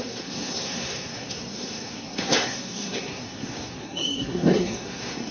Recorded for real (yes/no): no